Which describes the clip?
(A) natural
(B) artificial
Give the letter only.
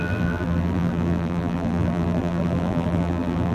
B